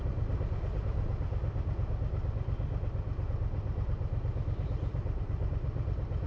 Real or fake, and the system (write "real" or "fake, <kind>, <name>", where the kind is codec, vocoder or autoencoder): real